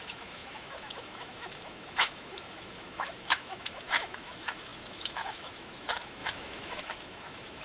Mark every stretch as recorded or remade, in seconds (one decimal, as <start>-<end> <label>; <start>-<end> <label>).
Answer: 0.0-7.6 remade